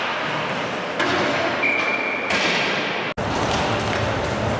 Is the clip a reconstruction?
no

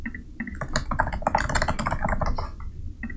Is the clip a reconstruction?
no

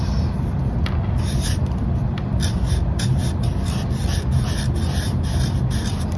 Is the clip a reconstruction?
yes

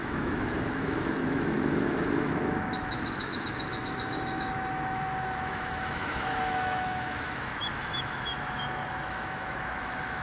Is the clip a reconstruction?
yes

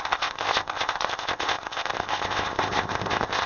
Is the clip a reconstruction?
yes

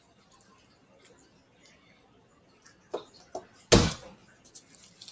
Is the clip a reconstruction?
no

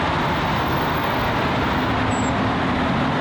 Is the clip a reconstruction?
no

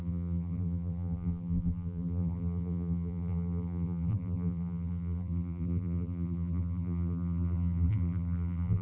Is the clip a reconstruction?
yes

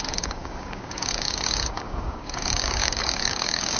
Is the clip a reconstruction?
yes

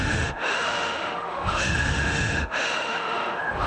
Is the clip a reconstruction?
yes